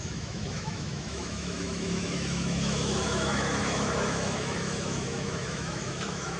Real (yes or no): no